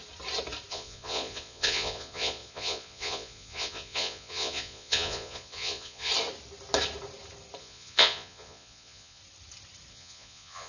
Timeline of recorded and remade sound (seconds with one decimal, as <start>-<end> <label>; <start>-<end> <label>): 0.0-0.7 recorded; 0.7-6.1 remade; 6.1-7.6 recorded; 7.6-9.2 remade; 9.2-9.9 recorded; 9.9-10.7 remade